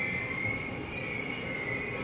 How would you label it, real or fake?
real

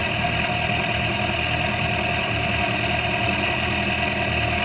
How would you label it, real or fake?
real